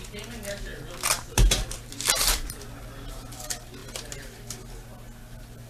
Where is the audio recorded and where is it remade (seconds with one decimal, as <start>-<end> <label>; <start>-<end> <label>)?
0.0-0.7 recorded; 0.7-2.6 remade; 2.6-5.7 recorded